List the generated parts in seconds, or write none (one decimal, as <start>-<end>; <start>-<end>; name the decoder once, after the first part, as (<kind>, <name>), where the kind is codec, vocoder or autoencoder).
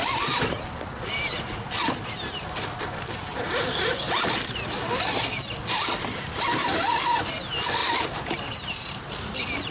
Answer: 7.8-9.0 (vocoder, BigVGAN v2)